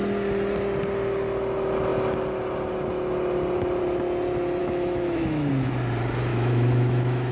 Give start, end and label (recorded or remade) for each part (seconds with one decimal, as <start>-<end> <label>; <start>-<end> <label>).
0.0-4.6 recorded; 4.6-5.5 remade; 5.5-6.3 recorded; 6.3-7.3 remade

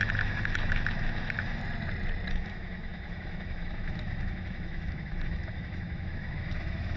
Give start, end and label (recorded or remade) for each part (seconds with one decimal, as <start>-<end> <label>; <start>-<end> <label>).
0.0-1.6 remade; 1.6-2.3 recorded; 2.3-7.0 remade

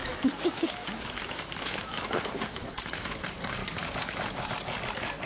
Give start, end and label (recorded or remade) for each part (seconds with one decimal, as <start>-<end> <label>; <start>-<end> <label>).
0.0-3.2 remade; 3.2-3.6 recorded; 3.6-4.5 remade; 4.5-5.3 recorded

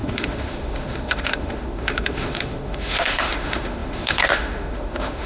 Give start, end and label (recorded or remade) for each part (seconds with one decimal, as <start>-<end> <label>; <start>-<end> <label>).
0.0-5.3 remade

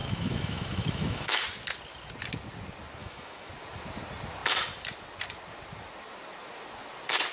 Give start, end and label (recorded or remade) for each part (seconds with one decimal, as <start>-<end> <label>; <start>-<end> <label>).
0.0-1.4 remade; 1.4-3.0 recorded; 3.0-3.5 remade; 3.5-7.3 recorded